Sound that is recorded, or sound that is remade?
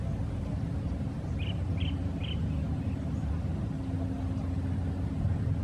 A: recorded